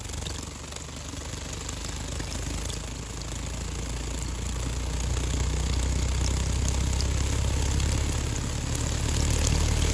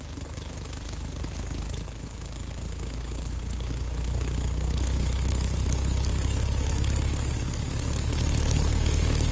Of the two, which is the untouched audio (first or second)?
first